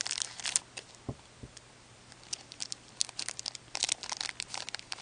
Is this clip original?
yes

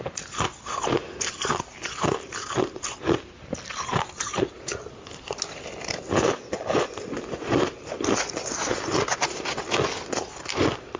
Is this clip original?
yes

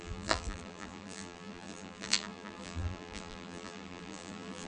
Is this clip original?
no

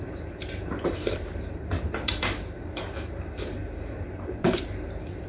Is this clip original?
no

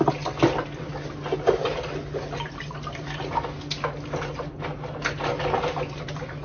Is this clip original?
yes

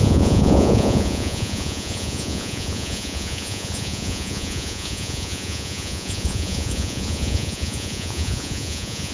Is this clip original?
no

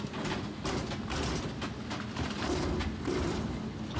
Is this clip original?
yes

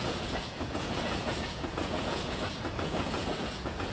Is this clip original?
no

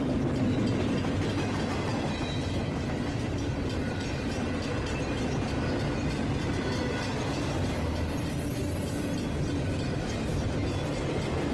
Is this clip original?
yes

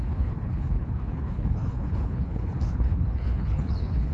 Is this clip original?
no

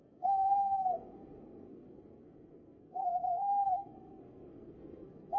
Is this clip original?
no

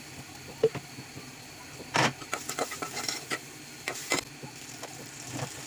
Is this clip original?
no